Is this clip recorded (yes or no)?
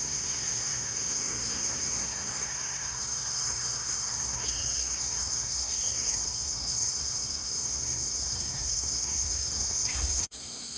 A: no